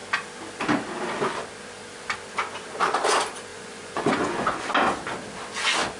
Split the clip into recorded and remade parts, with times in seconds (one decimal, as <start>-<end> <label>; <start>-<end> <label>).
0.0-3.5 recorded; 3.5-4.7 remade; 4.7-6.0 recorded

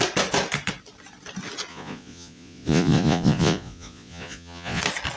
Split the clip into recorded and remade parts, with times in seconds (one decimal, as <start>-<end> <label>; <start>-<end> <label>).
0.0-1.7 recorded; 1.7-4.8 remade; 4.8-5.2 recorded